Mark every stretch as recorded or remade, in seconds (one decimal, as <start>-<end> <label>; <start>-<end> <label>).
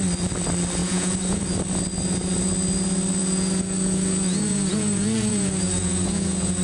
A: 0.0-0.8 recorded; 0.8-1.4 remade; 1.4-3.2 recorded; 3.2-6.6 remade